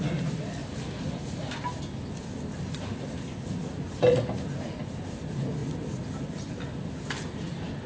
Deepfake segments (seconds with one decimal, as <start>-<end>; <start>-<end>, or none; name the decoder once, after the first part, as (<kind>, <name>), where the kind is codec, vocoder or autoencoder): none